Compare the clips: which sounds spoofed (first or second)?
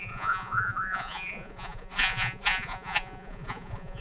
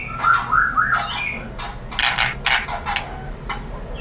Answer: first